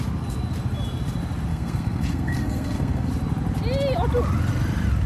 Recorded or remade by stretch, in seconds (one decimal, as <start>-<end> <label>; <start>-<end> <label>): 0.0-1.5 recorded; 1.5-3.1 remade; 3.1-5.1 recorded